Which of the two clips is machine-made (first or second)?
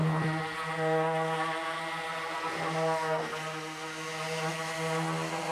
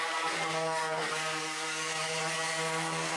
second